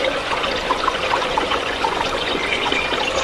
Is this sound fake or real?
fake